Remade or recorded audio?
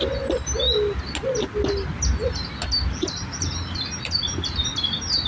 recorded